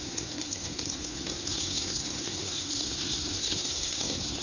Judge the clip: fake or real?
fake